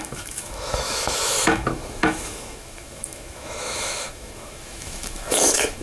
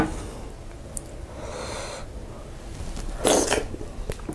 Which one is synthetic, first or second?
first